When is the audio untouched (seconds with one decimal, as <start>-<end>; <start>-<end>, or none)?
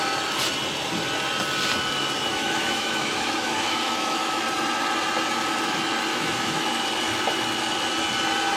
0.0-2.3; 4.4-6.1; 6.7-8.6